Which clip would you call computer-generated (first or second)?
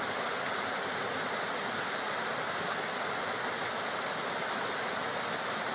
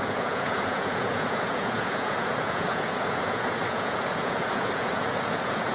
second